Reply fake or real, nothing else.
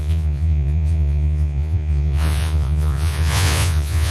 fake